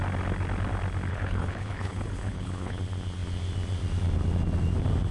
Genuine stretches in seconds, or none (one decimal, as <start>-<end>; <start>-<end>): 0.0-1.1; 2.8-5.1